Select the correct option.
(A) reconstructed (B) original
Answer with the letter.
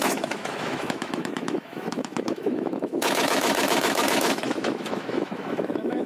A